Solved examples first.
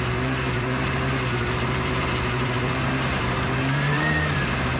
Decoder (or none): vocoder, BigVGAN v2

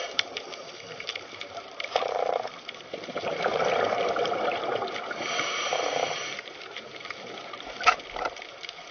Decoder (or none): vocoder, BigVGAN v2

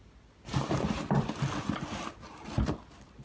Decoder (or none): none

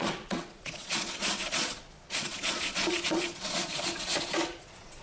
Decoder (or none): vocoder, Vocos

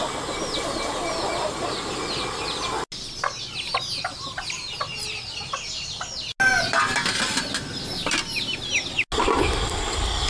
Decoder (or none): none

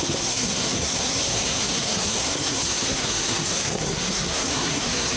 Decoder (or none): codec, SNAC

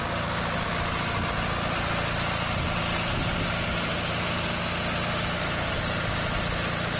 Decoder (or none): none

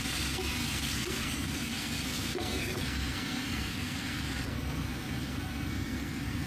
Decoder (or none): codec, SNAC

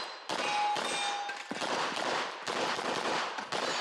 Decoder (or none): none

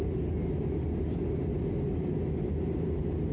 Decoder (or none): none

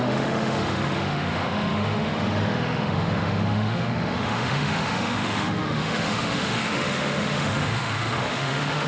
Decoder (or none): autoencoder, DAC-VAE